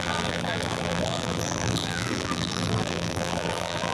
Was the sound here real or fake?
fake